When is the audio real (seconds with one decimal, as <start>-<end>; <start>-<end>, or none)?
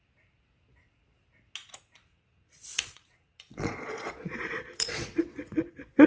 0.0-2.1